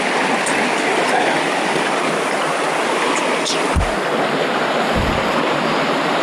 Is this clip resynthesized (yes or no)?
no